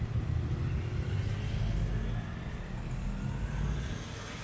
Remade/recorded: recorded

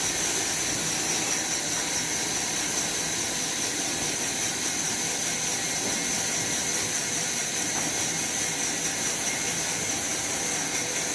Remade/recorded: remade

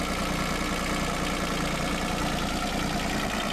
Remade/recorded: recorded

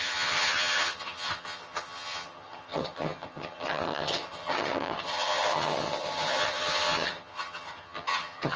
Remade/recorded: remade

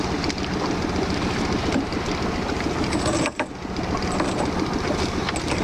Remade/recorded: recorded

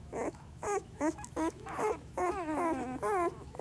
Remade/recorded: remade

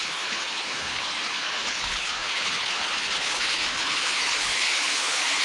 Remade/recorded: remade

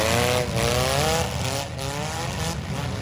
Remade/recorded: recorded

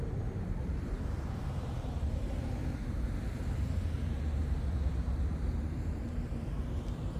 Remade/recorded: remade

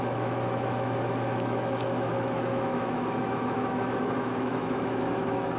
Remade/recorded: remade